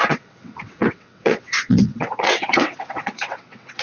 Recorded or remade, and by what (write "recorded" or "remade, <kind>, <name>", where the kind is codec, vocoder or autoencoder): remade, vocoder, WaveNeXt